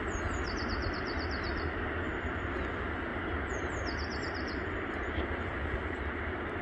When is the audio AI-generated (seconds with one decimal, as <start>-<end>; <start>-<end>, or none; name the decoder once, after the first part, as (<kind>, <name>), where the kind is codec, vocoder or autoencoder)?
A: 3.1-6.6 (vocoder, BigVGAN v2)